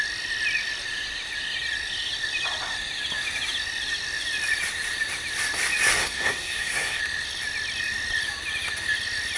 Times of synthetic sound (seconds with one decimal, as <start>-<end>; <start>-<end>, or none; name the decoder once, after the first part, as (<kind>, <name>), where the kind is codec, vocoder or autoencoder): 6.0-7.0 (codec, SNAC)